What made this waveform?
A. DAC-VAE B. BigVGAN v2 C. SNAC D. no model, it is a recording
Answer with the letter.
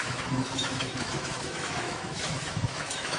A